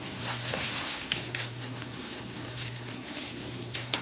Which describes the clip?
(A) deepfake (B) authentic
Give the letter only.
A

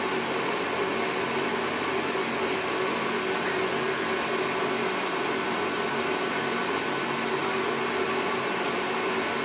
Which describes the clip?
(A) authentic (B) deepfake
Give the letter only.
A